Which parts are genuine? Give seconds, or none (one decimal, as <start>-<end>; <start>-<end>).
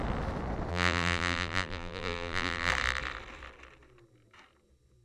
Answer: 0.0-0.7; 2.7-5.0